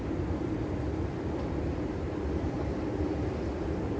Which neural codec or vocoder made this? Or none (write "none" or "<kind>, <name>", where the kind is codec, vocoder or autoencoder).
none